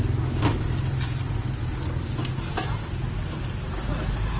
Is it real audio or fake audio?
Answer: real